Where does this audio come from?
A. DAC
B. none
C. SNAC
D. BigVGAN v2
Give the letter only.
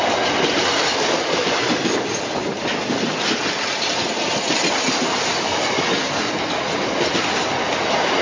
B